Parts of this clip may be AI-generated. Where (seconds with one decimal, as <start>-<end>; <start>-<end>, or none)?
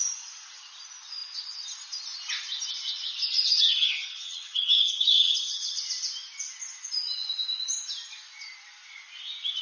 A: 3.6-5.8